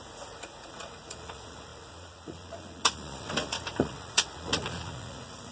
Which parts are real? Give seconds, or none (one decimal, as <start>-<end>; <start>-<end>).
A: none